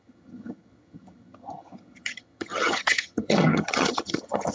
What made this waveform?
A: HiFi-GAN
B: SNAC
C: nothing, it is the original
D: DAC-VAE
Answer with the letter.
A